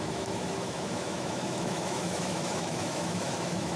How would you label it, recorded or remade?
remade